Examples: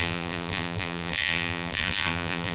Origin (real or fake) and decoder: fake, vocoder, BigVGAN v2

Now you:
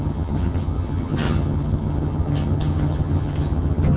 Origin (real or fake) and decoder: fake, vocoder, HiFi-GAN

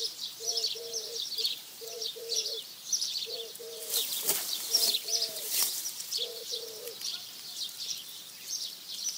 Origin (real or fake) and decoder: fake, vocoder, BigVGAN v2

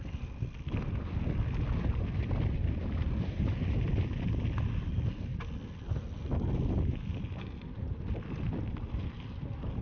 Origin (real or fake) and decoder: real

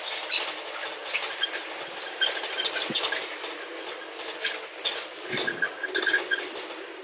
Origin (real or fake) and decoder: real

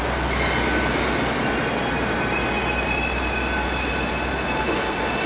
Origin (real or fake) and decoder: real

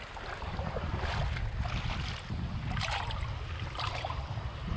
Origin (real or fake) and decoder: real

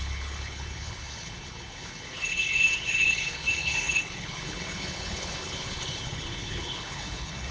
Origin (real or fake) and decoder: fake, codec, HILCodec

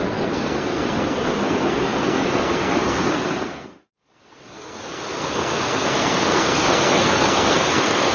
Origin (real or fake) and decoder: fake, codec, SNAC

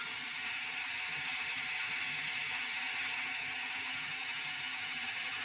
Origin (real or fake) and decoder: fake, vocoder, HiFi-GAN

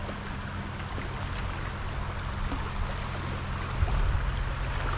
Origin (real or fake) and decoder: real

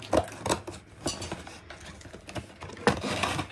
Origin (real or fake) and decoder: real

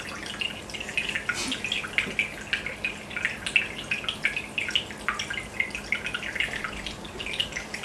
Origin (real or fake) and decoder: real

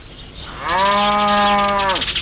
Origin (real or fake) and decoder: real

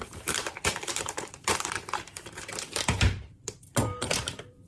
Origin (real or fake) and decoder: fake, vocoder, BigVGAN v2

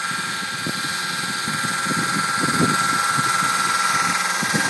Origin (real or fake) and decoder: real